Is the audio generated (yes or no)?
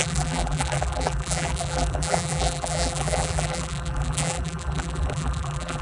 yes